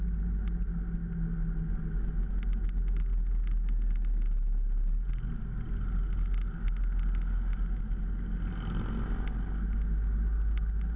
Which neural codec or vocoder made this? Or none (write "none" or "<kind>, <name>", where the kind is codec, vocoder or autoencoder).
none